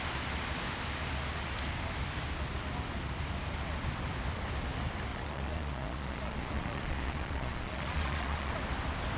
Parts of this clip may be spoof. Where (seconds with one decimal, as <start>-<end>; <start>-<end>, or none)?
5.1-8.5